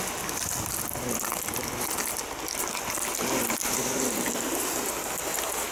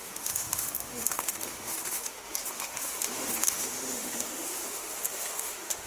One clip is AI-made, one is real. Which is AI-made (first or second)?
second